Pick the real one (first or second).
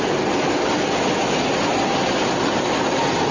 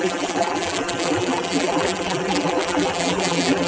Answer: first